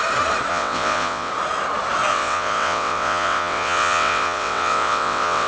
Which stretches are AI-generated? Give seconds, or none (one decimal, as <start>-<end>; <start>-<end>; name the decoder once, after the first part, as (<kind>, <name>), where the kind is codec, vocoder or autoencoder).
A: 0.5-1.3 (vocoder, WaveNeXt); 2.1-5.5